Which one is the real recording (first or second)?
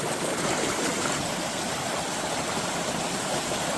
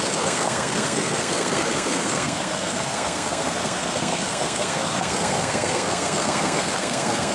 first